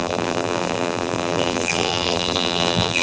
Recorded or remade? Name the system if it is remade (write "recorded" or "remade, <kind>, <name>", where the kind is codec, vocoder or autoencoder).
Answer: remade, vocoder, BigVGAN v2